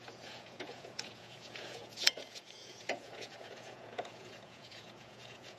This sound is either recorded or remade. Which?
remade